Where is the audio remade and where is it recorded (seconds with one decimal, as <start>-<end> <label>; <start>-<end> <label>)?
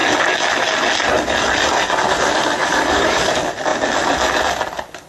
0.0-2.6 recorded; 2.6-3.3 remade; 3.3-5.1 recorded